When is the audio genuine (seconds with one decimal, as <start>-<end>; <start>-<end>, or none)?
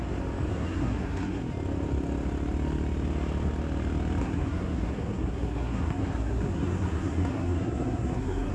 0.0-0.5; 1.4-4.2